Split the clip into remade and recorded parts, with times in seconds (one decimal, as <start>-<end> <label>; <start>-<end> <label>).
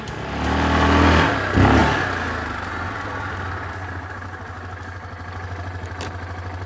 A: 0.0-6.7 recorded